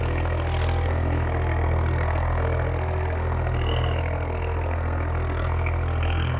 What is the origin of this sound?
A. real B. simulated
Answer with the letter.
B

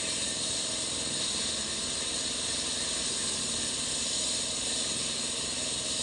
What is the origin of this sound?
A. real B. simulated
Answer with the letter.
A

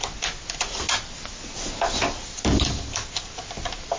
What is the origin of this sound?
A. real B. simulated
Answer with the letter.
A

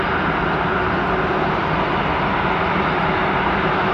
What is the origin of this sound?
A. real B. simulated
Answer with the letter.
A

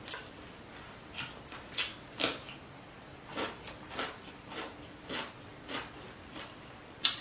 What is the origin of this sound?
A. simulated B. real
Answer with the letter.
B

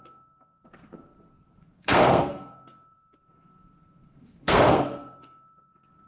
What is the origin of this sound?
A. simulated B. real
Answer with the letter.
A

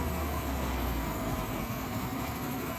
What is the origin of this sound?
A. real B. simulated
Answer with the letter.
B